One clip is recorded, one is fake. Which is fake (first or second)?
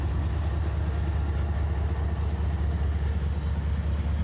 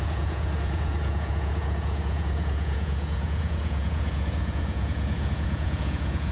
second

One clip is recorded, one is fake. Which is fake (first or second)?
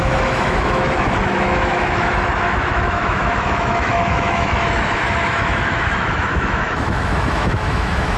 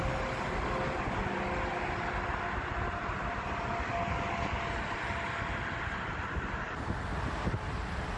first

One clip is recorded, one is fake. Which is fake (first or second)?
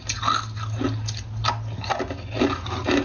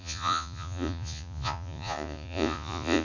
second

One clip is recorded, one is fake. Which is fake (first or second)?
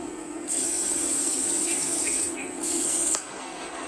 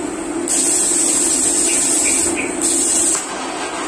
first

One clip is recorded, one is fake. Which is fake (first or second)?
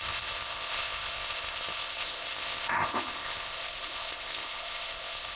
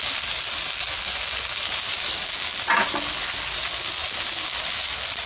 first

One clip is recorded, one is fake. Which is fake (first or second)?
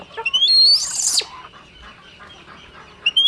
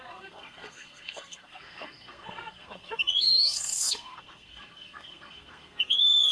second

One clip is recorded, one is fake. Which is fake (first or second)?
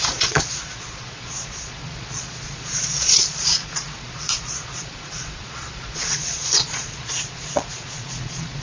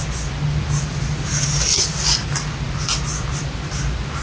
first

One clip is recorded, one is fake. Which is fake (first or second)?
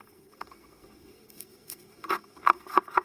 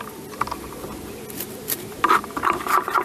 first